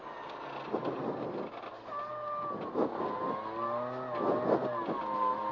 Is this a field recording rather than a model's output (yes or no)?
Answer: yes